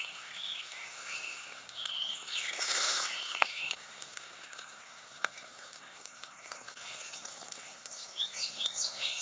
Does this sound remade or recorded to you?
remade